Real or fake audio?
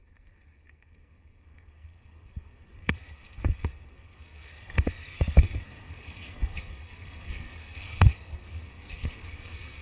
fake